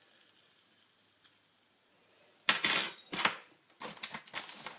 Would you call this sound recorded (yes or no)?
yes